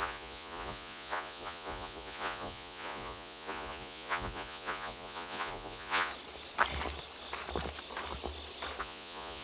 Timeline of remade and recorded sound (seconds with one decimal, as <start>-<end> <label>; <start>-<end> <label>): 0.0-6.1 remade; 6.1-8.8 recorded; 8.8-9.4 remade